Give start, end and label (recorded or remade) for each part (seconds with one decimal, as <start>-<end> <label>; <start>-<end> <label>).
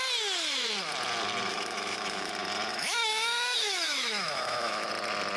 0.0-1.5 recorded; 1.5-2.3 remade; 2.3-2.7 recorded; 2.7-4.9 remade; 4.9-5.4 recorded